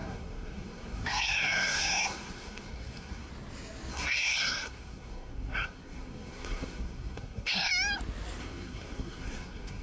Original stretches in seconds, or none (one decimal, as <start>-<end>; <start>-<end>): 3.3-3.9; 7.7-8.4